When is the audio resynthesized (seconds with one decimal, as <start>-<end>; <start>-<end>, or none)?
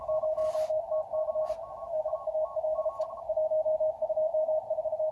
none